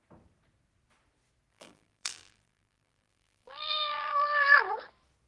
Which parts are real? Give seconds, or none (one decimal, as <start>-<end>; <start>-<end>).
0.0-1.5; 4.7-5.3